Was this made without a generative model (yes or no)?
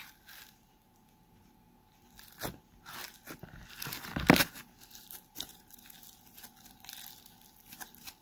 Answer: yes